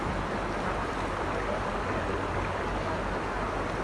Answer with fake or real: real